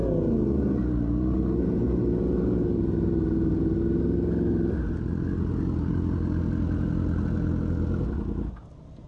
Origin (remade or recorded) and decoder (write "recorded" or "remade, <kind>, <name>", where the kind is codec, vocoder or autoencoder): recorded